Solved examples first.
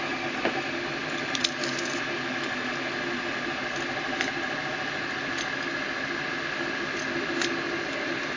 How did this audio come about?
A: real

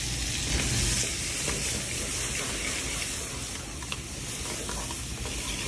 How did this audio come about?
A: real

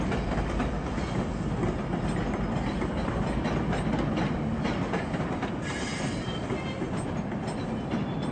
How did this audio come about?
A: real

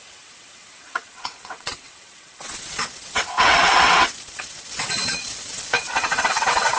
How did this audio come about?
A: fake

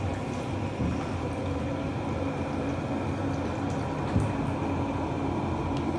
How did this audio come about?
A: real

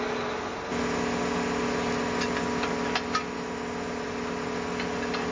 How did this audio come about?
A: real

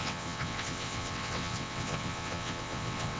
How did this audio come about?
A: fake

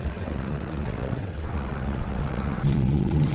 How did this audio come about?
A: fake